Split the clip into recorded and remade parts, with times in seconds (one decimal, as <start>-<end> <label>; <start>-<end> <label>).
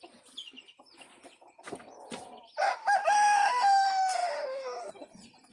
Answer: 0.0-2.8 recorded; 2.8-4.9 remade; 4.9-5.5 recorded